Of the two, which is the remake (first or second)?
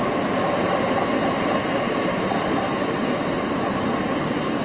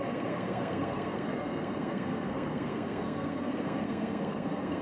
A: second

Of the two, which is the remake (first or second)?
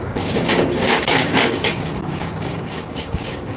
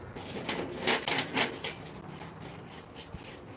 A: first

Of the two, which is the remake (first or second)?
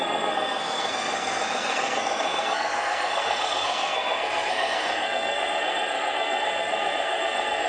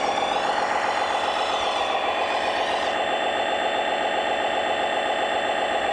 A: first